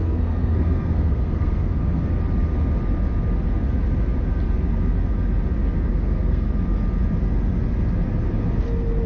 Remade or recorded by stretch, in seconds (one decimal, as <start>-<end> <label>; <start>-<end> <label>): 0.0-2.0 remade; 2.0-5.9 recorded; 5.9-6.5 remade; 6.5-9.1 recorded